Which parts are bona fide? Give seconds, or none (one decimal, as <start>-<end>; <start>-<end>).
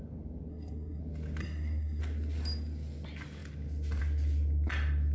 0.0-0.5; 1.0-1.4; 2.0-5.1